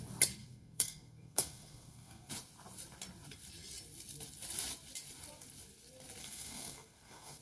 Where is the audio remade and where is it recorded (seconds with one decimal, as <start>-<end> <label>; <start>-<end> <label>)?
0.0-0.4 recorded; 0.4-2.3 remade; 2.3-6.2 recorded; 6.2-7.4 remade

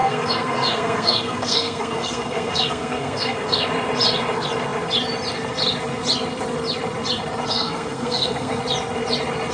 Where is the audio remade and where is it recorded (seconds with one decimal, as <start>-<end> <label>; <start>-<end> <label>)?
0.0-3.7 remade; 3.7-7.5 recorded; 7.5-8.6 remade; 8.6-9.5 recorded